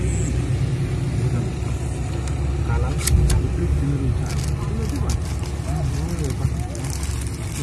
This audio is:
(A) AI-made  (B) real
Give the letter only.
B